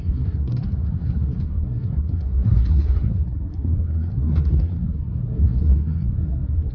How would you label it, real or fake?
fake